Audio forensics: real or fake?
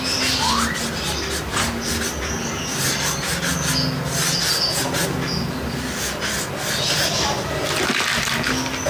real